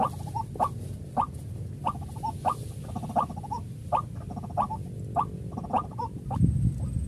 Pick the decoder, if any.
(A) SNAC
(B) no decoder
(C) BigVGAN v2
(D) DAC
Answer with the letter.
B